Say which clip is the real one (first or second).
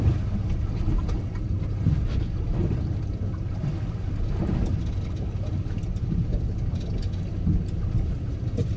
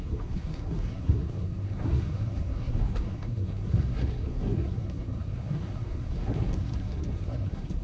first